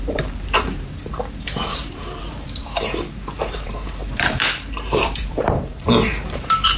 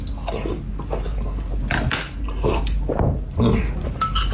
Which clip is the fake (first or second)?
first